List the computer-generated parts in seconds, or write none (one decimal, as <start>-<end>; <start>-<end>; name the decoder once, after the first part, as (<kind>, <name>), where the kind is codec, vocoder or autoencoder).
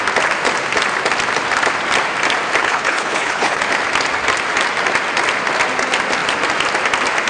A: 2.6-3.6 (codec, HILCodec)